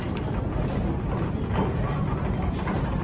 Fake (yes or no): no